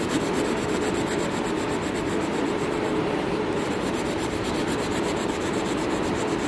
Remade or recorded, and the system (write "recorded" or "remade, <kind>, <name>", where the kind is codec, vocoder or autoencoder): remade, vocoder, BigVGAN v2